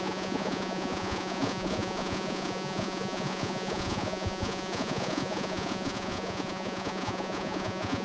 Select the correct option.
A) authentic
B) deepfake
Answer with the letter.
B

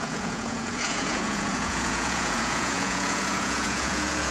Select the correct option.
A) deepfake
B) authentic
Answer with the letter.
A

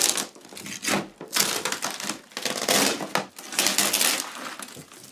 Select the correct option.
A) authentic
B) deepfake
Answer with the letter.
A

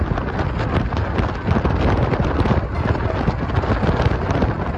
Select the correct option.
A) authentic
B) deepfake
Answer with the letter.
A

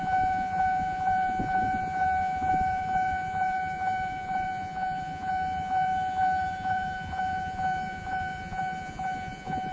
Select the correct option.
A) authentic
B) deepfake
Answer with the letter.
B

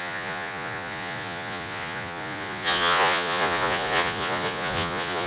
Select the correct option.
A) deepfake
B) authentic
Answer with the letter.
A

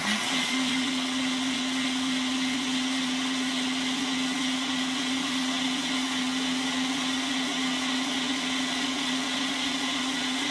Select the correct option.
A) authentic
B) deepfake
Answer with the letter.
B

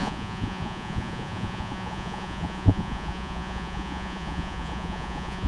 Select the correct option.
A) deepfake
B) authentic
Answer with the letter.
A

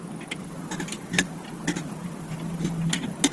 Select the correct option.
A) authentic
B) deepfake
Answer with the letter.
A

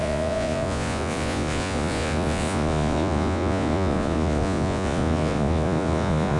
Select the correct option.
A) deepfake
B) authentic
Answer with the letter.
A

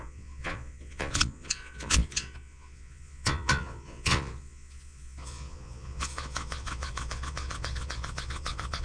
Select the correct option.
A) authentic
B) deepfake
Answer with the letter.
B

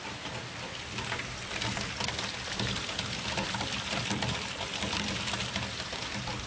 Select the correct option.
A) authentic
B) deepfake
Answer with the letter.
A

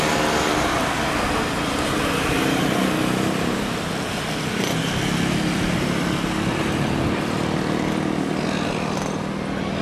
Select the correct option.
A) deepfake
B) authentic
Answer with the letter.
B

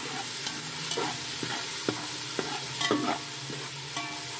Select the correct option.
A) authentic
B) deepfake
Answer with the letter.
A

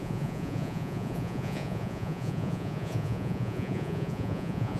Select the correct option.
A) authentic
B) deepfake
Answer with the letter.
B